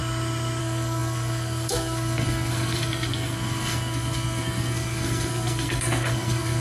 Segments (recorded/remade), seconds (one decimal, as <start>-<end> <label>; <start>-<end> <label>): 0.0-0.6 recorded; 0.6-6.6 remade